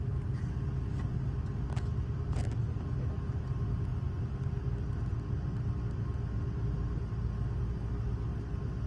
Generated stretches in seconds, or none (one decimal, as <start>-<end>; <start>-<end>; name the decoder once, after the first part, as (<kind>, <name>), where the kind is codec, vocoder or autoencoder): none